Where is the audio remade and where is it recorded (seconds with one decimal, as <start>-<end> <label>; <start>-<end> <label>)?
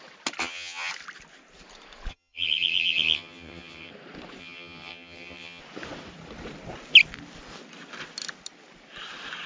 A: 0.0-0.4 recorded; 0.4-0.9 remade; 0.9-2.1 recorded; 2.1-3.9 remade; 3.9-4.4 recorded; 4.4-5.6 remade; 5.6-9.5 recorded